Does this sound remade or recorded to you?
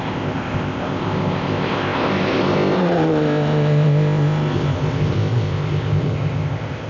remade